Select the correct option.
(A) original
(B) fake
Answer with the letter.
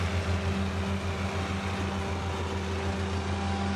A